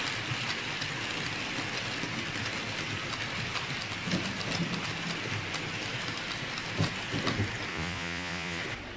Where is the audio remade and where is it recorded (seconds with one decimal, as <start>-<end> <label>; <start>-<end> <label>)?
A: 0.0-7.7 recorded; 7.7-8.6 remade; 8.6-9.0 recorded